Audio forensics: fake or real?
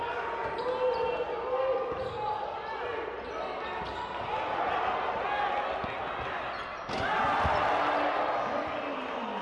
real